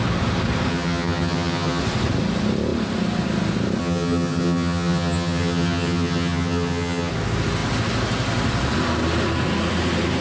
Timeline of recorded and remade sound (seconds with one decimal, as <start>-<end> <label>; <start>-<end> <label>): 0.0-0.7 recorded; 0.7-1.8 remade; 1.8-3.8 recorded; 3.8-7.1 remade; 7.1-10.2 recorded